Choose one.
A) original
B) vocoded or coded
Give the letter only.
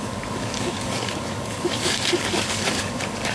B